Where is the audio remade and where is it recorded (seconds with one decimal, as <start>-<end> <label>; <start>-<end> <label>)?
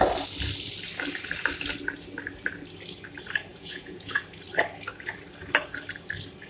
0.0-3.5 recorded; 3.5-4.2 remade; 4.2-6.5 recorded